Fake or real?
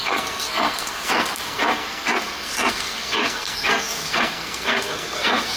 fake